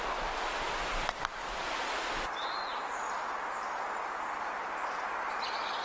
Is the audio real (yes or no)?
yes